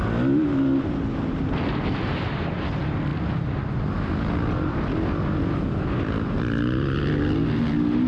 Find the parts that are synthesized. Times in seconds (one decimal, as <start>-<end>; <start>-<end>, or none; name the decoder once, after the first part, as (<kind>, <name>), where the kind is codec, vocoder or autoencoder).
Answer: none

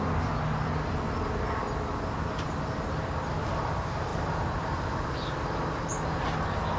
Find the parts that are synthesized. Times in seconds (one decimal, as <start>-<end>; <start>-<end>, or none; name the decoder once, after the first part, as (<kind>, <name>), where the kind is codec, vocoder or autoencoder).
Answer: none

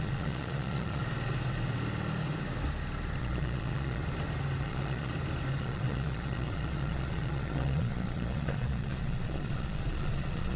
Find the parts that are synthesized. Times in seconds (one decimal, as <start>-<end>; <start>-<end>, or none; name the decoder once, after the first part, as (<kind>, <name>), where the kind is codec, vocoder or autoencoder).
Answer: 0.0-1.0 (vocoder, Vocos); 3.2-4.0; 4.6-5.1; 5.6-10.6

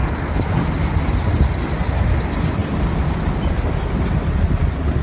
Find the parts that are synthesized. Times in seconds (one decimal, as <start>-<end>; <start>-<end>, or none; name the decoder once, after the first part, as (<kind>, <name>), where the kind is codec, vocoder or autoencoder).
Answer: none

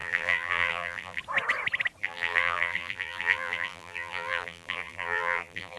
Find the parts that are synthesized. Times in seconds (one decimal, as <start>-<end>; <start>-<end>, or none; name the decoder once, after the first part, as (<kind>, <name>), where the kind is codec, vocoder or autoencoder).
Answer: 0.0-1.2 (vocoder, BigVGAN v2); 2.0-5.8

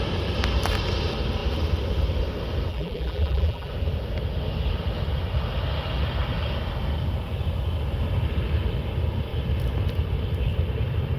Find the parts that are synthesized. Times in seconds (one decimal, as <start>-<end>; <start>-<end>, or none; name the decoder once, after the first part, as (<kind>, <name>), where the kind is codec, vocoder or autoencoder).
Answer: 2.7-3.7 (vocoder, BigVGAN v2)

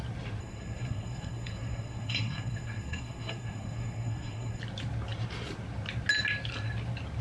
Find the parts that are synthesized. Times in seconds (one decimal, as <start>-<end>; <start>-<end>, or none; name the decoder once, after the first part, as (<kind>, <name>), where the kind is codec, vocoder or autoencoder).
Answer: 0.4-4.6 (codec, SNAC)

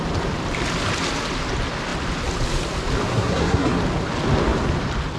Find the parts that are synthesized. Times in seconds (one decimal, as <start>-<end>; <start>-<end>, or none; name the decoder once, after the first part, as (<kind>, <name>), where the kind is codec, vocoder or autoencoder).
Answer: 3.1-3.8 (codec, SNAC)